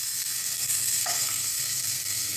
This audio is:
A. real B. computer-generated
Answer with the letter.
B